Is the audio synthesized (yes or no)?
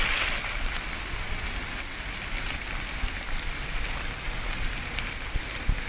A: no